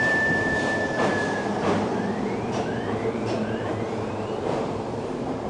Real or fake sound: fake